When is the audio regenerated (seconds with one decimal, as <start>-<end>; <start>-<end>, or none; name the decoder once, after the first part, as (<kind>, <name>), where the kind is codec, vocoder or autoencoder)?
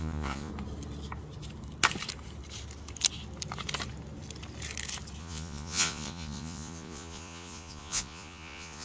0.0-0.5 (vocoder, Vocos); 5.2-8.8